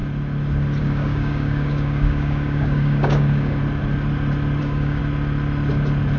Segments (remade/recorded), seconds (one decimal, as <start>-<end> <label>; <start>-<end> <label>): 0.0-0.8 recorded; 0.8-3.6 remade; 3.6-4.6 recorded; 4.6-5.0 remade; 5.0-6.2 recorded